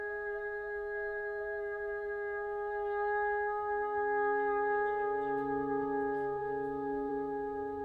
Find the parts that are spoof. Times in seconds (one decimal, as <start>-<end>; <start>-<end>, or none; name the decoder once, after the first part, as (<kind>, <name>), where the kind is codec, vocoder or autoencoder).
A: 6.4-7.1 (autoencoder, DAC-VAE)